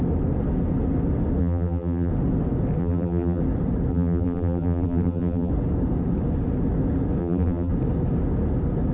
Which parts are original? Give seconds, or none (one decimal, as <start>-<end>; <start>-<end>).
0.0-1.4; 2.1-2.8; 3.4-3.9; 5.5-7.2; 7.7-8.9